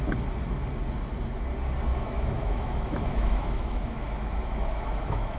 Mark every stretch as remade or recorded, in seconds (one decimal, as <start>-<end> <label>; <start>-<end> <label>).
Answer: 0.0-1.9 recorded; 1.9-5.4 remade